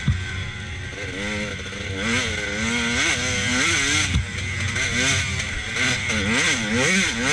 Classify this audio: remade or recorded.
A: recorded